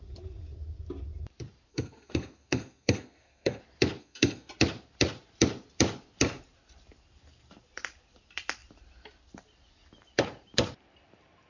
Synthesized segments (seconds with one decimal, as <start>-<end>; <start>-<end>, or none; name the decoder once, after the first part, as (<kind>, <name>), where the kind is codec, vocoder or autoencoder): 1.7-3.6 (codec, SNAC); 4.0-4.5